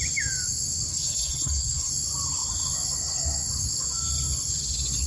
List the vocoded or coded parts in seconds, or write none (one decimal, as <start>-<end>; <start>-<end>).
0.9-1.9